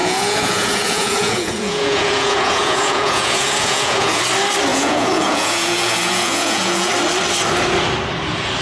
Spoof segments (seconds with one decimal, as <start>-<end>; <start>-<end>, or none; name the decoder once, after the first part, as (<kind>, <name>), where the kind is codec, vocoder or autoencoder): 0.0-4.2 (vocoder, Vocos); 4.7-6.9